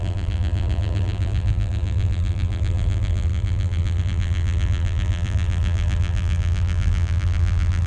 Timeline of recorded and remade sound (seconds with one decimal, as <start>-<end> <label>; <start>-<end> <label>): 0.0-7.9 remade